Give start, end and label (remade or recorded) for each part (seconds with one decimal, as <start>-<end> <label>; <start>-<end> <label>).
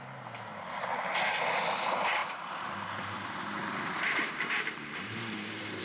0.0-2.2 recorded; 2.2-5.8 remade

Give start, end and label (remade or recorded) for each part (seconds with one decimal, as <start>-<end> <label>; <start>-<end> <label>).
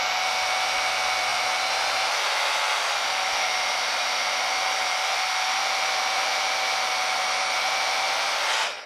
0.0-8.9 recorded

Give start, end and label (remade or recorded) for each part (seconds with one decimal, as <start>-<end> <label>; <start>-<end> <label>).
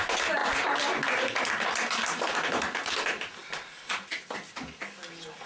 0.0-5.5 recorded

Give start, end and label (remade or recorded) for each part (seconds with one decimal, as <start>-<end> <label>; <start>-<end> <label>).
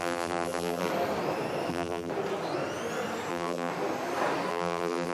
0.0-0.9 remade; 0.9-1.7 recorded; 1.7-2.1 remade; 2.1-3.3 recorded; 3.3-3.7 remade; 3.7-4.5 recorded; 4.5-5.1 remade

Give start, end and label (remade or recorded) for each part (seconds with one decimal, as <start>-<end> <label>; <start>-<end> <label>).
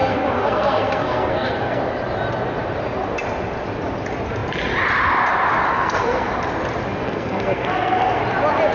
0.0-1.8 remade; 1.8-5.7 recorded; 5.7-6.3 remade; 6.3-7.0 recorded; 7.0-8.2 remade; 8.2-8.7 recorded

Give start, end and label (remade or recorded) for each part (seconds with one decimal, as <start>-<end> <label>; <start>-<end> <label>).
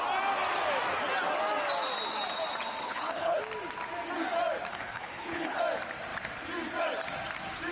0.0-2.8 recorded; 2.8-3.4 remade; 3.4-4.7 recorded; 4.7-5.6 remade; 5.6-7.7 recorded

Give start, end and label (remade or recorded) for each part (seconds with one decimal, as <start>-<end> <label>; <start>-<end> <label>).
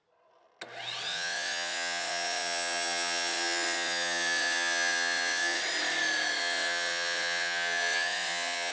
0.0-1.1 recorded; 1.1-5.6 remade; 5.6-6.4 recorded; 6.4-8.7 remade